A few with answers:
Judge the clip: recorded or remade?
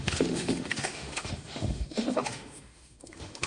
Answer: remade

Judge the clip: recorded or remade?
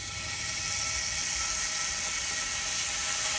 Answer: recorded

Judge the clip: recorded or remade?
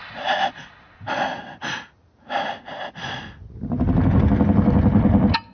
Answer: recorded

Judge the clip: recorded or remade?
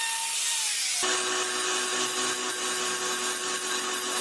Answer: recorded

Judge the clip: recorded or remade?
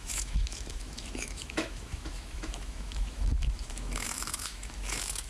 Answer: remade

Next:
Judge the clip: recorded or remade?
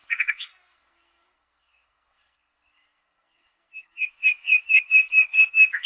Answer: remade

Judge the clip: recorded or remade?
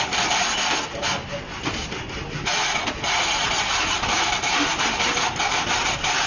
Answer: recorded